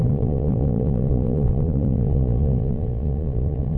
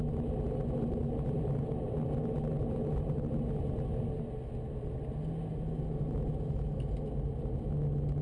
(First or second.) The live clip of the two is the second